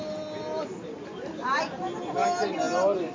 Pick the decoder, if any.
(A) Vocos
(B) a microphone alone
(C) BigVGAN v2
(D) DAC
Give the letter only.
B